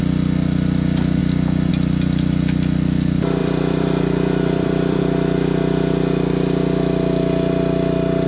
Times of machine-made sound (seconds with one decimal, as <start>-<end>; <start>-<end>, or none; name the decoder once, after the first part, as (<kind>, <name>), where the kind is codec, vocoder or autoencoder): 1.2-1.7 (vocoder, BigVGAN v2); 3.4-5.0

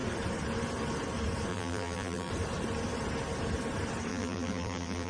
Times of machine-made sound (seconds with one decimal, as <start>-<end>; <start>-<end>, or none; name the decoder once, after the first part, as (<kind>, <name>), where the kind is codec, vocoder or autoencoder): 1.5-2.3 (vocoder, BigVGAN v2); 4.1-5.1

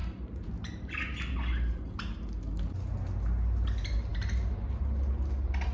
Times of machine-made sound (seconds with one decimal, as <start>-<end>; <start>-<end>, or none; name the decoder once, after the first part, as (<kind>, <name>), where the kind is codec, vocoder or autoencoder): 0.0-0.5 (vocoder, BigVGAN v2)

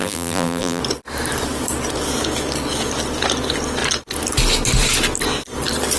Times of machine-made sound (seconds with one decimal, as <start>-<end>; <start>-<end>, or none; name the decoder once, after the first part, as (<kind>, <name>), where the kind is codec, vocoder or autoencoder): 0.0-0.8 (vocoder, BigVGAN v2)